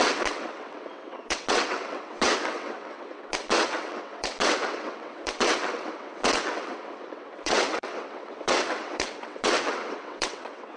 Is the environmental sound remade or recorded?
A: remade